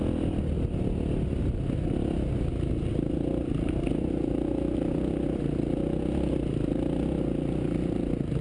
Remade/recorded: recorded